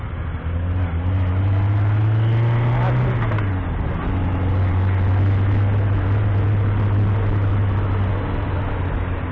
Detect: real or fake real